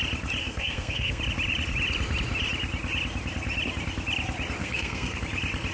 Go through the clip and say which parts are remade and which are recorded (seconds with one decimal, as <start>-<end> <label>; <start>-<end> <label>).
0.0-0.4 recorded; 0.4-1.2 remade; 1.2-4.6 recorded; 4.6-5.2 remade; 5.2-5.7 recorded